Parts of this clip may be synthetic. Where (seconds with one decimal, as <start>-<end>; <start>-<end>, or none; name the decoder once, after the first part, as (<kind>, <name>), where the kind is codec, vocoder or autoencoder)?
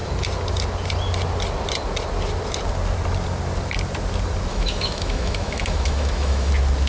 4.5-6.5 (autoencoder, DAC-VAE)